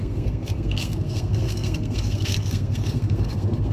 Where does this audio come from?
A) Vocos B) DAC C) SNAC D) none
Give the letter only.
C